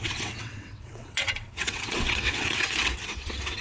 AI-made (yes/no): yes